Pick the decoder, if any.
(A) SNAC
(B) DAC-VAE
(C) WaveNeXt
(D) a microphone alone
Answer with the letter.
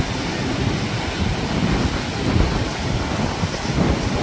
D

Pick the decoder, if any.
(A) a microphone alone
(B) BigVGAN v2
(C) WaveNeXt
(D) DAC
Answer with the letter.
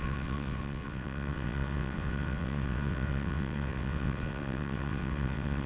C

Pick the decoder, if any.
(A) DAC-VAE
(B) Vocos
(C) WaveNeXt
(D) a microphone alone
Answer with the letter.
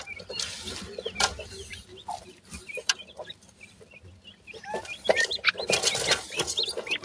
D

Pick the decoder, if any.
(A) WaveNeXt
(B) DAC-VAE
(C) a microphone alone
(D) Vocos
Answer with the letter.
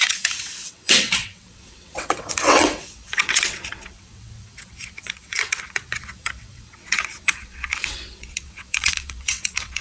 A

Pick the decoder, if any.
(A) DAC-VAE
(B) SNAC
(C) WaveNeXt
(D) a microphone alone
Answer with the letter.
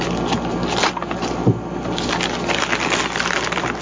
D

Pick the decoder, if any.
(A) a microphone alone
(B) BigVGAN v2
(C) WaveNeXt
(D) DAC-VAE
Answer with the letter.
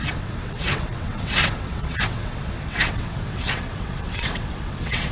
C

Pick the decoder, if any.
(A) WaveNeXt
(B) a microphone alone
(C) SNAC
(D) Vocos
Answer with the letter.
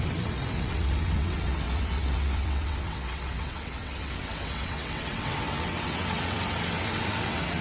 A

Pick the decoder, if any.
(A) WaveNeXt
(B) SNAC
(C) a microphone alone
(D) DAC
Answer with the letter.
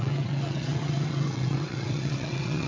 A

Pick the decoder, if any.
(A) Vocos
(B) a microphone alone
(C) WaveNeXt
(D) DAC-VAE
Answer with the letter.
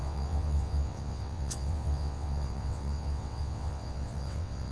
C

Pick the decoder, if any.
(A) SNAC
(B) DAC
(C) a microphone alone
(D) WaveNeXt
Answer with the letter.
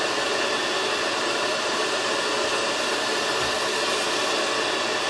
C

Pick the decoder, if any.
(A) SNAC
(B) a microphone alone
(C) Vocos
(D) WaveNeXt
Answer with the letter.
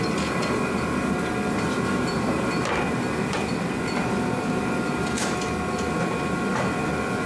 B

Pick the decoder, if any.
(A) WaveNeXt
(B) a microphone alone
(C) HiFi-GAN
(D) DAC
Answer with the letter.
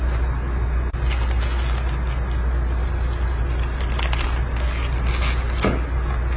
B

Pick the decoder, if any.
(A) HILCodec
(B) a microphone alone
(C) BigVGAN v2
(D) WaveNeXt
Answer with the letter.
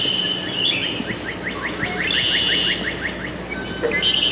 B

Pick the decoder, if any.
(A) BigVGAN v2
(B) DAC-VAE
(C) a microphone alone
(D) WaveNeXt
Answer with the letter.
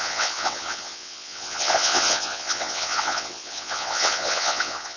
D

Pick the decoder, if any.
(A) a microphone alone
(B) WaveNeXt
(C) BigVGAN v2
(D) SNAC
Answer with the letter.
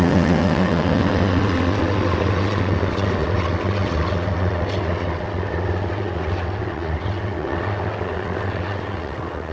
B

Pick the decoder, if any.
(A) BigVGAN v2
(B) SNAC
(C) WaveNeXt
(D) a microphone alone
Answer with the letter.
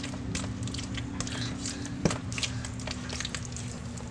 D